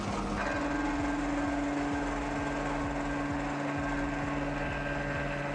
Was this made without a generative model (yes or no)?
yes